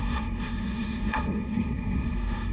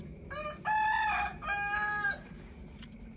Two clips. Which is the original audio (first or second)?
second